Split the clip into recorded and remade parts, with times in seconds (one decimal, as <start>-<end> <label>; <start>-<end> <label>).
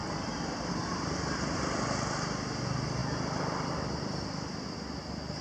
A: 0.0-5.4 recorded